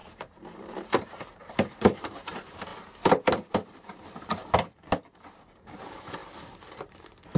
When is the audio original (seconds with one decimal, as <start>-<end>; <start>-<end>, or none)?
2.7-3.5